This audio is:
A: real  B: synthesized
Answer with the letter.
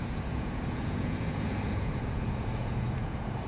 B